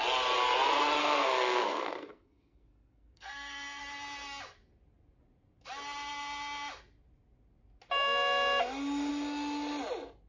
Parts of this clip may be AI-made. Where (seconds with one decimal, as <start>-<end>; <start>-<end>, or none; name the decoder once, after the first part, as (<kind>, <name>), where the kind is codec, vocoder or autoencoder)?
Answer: 1.0-3.8 (codec, SNAC)